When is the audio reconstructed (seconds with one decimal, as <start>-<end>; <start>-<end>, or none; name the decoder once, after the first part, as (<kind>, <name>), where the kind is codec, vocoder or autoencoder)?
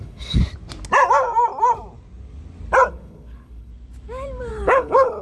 0.0-0.4 (codec, HILCodec); 2.9-3.7; 4.5-5.2